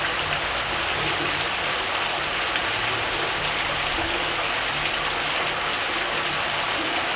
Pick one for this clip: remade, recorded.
recorded